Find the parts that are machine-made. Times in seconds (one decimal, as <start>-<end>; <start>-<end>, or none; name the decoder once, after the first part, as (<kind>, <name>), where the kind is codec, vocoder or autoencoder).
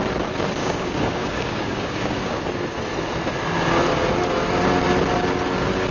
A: 0.6-2.4 (codec, DAC)